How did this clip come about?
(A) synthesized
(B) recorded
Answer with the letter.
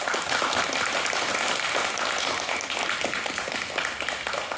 B